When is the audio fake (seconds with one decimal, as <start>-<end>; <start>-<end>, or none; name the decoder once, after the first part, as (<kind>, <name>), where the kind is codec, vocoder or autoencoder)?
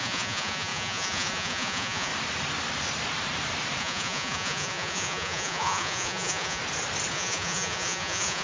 0.0-2.1 (vocoder, Vocos); 3.8-6.6; 7.1-8.4